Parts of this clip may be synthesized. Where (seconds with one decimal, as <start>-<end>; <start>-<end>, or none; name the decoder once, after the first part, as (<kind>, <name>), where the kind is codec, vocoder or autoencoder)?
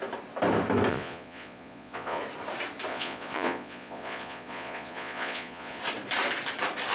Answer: 0.9-2.2 (vocoder, Vocos); 2.9-5.8